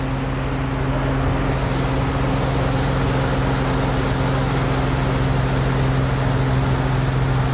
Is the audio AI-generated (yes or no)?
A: no